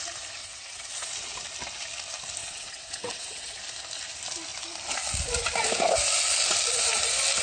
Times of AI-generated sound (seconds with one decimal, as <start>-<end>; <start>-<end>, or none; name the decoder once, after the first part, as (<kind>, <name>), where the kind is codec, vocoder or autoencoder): 0.4-1.1 (vocoder, WaveNeXt); 2.4-3.6